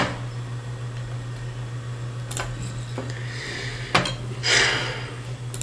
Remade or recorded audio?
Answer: recorded